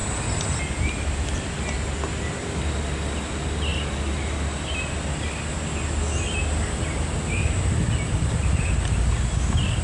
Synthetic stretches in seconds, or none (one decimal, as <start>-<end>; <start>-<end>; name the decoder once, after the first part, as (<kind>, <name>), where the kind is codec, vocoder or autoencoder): none